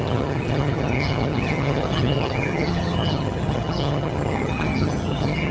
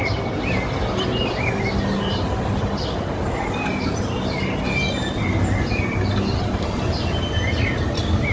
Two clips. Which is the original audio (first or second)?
second